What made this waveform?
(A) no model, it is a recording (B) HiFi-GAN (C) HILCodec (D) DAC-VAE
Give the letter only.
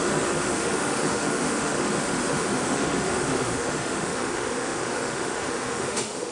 D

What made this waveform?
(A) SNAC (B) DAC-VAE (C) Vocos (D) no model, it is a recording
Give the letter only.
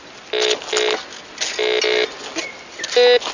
D